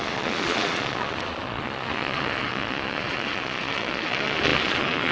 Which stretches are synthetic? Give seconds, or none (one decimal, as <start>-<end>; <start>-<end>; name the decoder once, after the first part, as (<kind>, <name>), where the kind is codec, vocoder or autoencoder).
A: 0.0-5.1 (vocoder, Vocos)